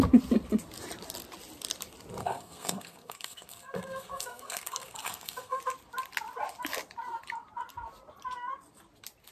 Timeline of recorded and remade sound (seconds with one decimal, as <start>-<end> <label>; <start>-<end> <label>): 0.0-2.2 recorded; 2.2-5.6 remade; 5.6-9.3 recorded